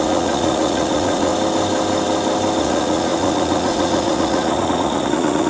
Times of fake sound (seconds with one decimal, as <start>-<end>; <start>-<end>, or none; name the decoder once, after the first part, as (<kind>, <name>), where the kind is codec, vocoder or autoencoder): 0.0-1.3 (vocoder, Vocos); 2.6-5.5